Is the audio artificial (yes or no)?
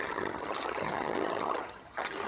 yes